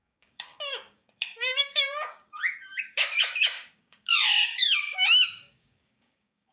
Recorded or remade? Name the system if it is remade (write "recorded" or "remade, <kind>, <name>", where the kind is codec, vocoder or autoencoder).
remade, codec, DAC